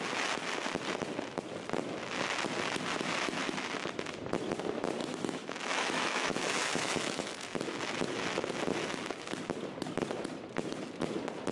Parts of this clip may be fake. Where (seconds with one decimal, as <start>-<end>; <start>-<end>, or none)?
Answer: 5.0-7.4